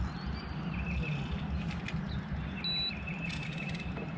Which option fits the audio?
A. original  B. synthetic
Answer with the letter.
A